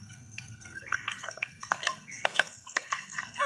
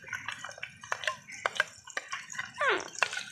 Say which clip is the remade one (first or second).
first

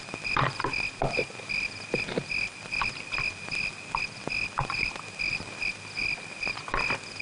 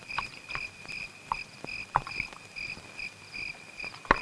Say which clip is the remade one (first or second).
second